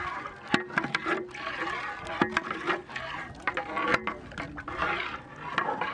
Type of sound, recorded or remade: recorded